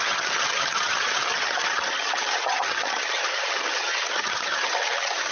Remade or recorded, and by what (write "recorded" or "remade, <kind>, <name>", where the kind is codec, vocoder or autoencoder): remade, vocoder, HiFi-GAN